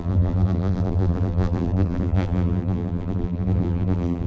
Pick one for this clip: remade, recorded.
remade